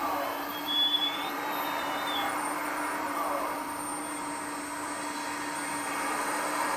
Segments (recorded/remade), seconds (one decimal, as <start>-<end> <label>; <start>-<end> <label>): 0.0-3.9 remade; 3.9-5.9 recorded; 5.9-6.8 remade